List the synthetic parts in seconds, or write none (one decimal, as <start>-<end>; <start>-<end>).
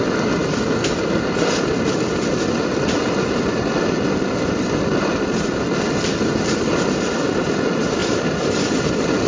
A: 8.0-8.8